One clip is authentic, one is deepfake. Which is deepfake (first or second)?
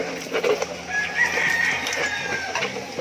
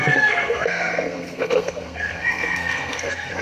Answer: second